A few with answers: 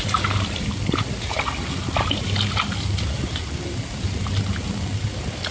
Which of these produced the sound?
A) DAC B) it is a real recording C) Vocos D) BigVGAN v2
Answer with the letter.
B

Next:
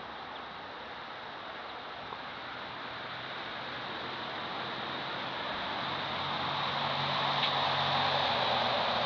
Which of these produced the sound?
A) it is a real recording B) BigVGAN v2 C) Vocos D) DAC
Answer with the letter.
A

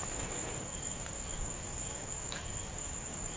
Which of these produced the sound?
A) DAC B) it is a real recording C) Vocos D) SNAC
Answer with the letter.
A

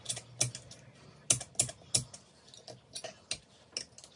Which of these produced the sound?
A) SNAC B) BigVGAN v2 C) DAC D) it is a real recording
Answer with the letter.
D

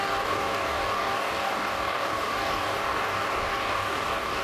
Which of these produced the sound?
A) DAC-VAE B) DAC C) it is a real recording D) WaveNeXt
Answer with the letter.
B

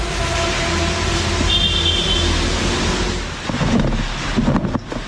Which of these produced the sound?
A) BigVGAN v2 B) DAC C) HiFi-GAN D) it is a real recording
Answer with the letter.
D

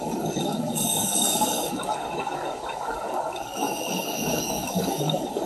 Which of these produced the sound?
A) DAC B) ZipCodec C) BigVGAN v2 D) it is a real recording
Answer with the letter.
A